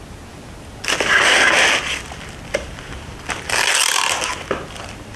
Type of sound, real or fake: real